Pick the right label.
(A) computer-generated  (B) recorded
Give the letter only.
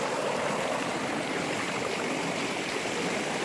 B